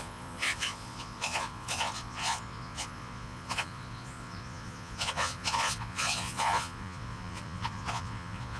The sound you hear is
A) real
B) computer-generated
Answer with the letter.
B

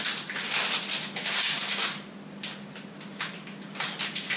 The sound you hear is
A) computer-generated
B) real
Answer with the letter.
B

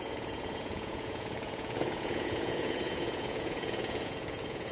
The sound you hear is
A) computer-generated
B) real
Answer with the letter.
A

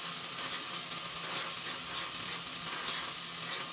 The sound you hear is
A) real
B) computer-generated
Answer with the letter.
A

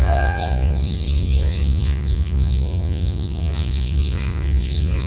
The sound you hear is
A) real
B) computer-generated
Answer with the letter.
B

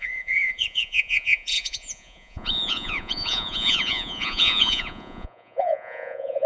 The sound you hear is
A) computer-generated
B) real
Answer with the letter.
A